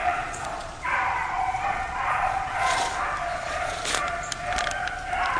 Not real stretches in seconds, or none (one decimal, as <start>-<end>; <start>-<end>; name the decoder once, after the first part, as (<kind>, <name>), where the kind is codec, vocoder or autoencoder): 0.0-2.7 (vocoder, Vocos); 3.2-3.8